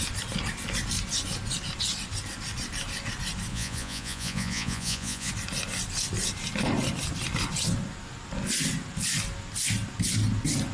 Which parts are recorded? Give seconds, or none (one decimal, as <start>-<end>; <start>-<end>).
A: 0.0-3.5; 5.3-10.7